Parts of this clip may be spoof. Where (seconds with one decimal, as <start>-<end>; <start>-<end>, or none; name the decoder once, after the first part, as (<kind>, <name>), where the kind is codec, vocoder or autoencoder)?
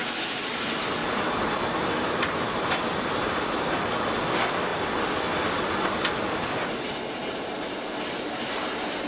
none